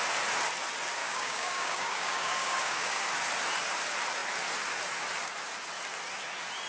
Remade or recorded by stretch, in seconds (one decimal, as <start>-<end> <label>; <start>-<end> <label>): 0.0-1.0 recorded; 1.0-3.1 remade; 3.1-6.7 recorded